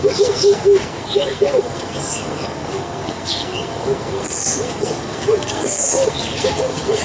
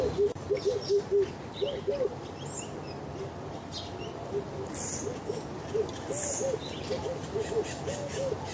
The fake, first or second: first